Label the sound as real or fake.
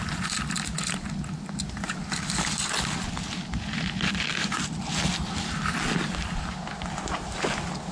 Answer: real